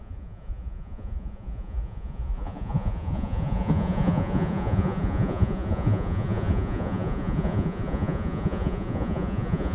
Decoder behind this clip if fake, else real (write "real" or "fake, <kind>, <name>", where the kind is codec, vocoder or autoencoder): fake, vocoder, Vocos